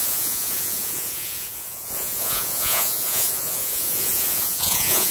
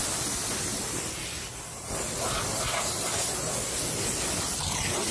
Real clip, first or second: second